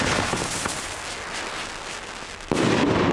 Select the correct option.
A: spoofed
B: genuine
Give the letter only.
B